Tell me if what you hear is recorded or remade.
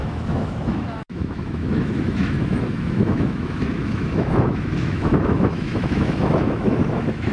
remade